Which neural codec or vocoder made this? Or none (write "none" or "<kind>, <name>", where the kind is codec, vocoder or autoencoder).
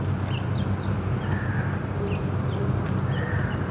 none